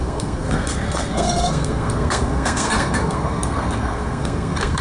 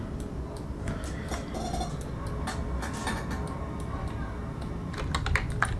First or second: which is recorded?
second